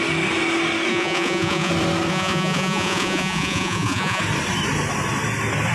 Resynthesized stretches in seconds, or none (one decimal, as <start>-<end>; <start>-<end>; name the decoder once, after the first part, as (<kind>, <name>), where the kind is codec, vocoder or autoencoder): 0.9-1.7 (vocoder, Vocos); 2.1-4.2